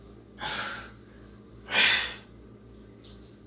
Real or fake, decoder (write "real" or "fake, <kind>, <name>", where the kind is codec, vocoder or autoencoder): real